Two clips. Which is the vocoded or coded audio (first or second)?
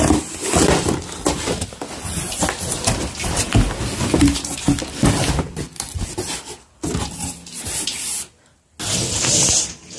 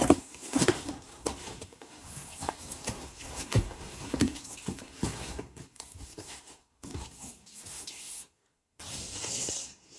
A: second